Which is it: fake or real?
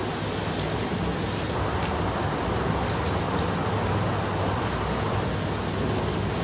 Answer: real